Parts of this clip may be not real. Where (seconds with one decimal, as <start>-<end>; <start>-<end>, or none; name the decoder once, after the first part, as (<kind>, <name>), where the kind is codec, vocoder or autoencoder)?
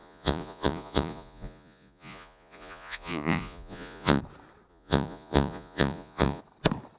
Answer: 0.0-4.2 (vocoder, Vocos); 4.7-6.4